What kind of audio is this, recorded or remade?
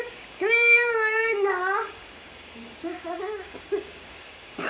remade